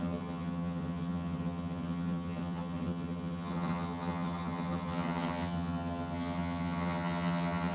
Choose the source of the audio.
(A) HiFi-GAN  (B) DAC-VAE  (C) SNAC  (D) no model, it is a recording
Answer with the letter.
A